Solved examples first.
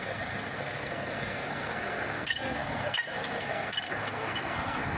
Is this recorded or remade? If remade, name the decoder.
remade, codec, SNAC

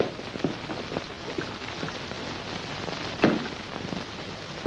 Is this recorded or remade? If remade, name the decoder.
recorded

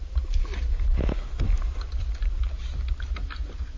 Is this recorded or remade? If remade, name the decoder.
recorded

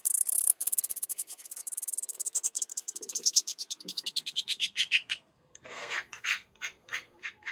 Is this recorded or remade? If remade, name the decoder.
remade, codec, SNAC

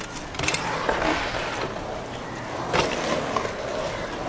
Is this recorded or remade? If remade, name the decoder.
recorded